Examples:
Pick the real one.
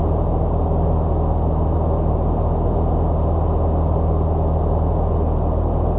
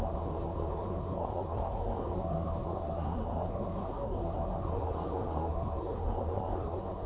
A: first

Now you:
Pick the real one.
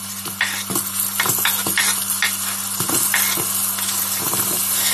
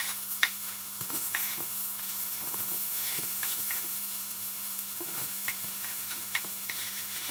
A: first